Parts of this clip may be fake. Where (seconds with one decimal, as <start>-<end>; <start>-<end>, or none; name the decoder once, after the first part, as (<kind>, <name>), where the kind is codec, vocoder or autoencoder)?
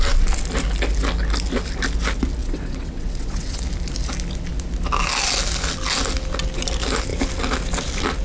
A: 2.4-3.6 (vocoder, WaveNeXt)